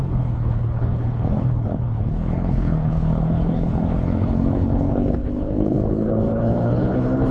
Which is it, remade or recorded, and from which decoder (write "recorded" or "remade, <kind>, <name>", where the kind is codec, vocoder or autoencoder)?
remade, codec, HILCodec